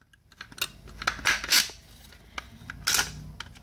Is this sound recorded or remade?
recorded